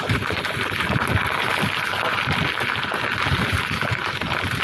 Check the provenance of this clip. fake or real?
real